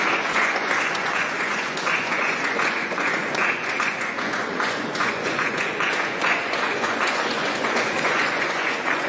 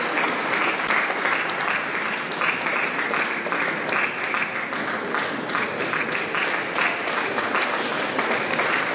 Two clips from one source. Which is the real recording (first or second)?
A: second